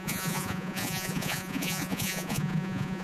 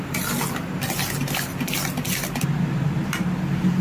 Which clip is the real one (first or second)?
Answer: second